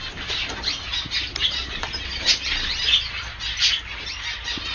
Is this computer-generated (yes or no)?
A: no